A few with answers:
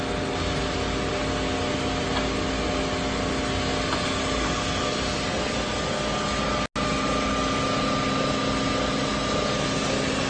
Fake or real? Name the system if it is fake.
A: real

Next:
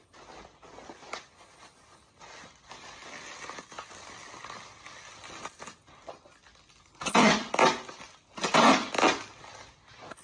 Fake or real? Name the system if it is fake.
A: real